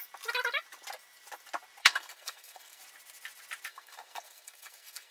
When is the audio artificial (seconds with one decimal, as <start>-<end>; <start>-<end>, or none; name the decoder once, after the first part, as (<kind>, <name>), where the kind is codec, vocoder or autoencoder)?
1.8-2.8 (codec, SNAC); 3.7-5.1